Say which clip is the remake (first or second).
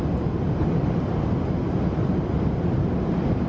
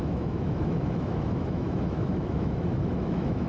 second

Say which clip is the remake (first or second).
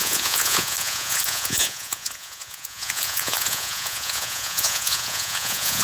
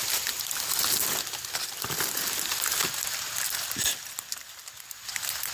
first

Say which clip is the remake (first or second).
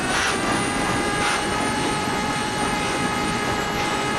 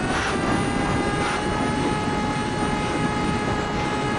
first